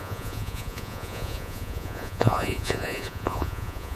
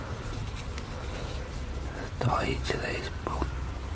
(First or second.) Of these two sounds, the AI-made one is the first